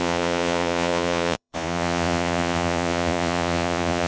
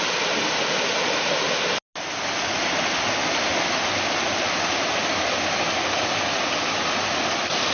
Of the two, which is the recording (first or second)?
second